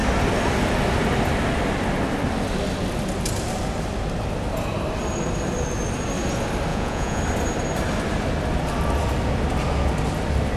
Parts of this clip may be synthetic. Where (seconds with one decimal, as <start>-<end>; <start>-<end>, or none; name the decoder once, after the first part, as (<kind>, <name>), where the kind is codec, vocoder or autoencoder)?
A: 6.7-7.2 (vocoder, Vocos)